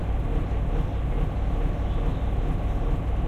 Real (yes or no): yes